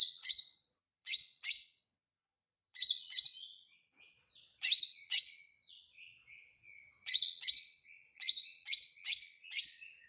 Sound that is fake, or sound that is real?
fake